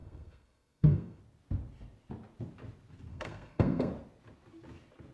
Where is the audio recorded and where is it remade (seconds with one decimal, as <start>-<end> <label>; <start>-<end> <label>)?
0.0-1.2 remade; 1.2-3.1 recorded; 3.1-3.9 remade; 3.9-5.1 recorded